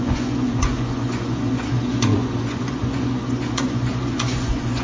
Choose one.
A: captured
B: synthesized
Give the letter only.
B